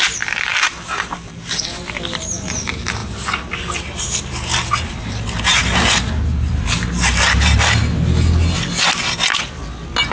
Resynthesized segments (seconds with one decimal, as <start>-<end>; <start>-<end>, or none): 0.0-7.8